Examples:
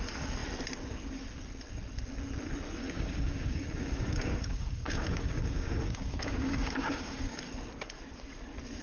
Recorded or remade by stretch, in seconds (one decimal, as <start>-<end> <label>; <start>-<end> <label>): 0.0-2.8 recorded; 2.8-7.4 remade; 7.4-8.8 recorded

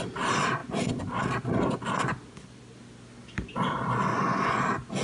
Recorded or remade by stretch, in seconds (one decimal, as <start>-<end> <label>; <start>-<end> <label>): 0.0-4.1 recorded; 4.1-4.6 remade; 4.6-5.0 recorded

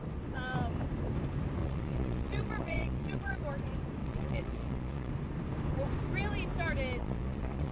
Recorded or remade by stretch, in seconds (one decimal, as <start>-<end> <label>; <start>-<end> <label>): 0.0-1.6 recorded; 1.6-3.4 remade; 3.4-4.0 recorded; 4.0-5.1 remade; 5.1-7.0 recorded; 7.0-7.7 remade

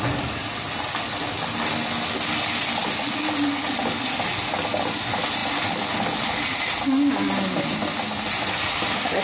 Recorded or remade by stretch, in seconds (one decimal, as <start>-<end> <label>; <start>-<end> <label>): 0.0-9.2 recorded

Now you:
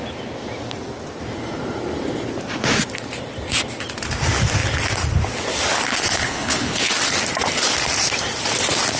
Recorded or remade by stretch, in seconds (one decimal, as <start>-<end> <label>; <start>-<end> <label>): 0.0-5.9 recorded; 5.9-6.9 remade; 6.9-9.0 recorded

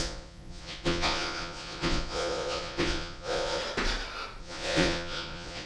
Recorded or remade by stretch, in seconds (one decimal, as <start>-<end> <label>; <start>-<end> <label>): 0.0-3.6 remade; 3.6-4.4 recorded; 4.4-5.7 remade

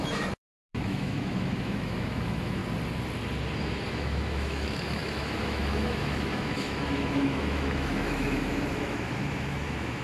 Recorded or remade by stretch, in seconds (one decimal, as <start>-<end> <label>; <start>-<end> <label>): 0.0-2.6 remade; 2.6-3.9 recorded; 3.9-10.0 remade